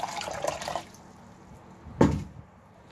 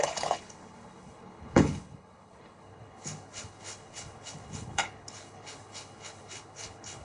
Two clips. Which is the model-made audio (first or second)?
second